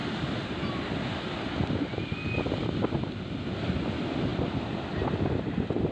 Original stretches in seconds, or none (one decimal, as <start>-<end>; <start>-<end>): 1.9-4.3